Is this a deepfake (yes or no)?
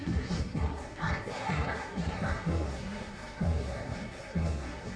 yes